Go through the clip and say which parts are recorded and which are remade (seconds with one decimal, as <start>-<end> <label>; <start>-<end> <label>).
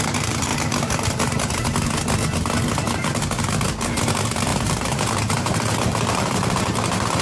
0.0-0.5 remade; 0.5-4.1 recorded; 4.1-7.2 remade